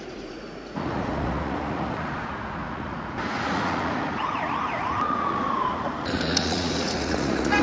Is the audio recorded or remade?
remade